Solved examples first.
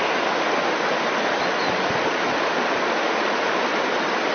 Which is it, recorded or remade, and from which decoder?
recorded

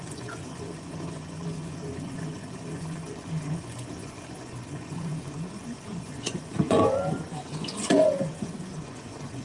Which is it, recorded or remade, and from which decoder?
remade, vocoder, Vocos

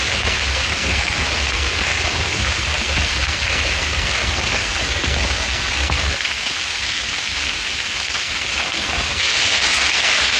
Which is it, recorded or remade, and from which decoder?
remade, codec, SNAC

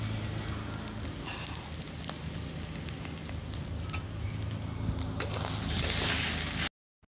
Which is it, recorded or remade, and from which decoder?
recorded